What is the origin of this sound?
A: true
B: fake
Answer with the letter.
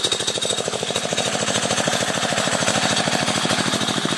B